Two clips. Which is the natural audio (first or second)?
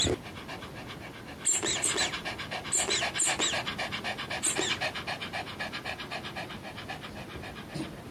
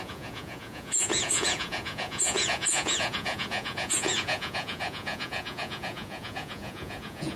first